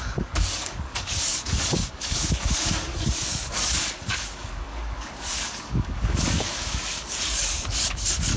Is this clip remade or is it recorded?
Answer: remade